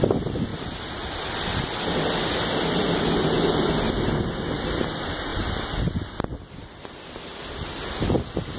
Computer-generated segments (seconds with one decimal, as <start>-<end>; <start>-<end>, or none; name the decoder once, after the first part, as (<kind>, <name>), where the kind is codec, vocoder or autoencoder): none